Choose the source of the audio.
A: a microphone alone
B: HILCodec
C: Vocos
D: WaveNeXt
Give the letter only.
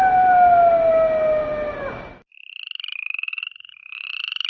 A